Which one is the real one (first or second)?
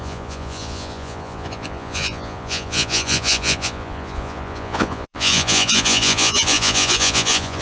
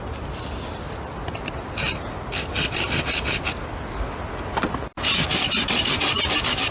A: second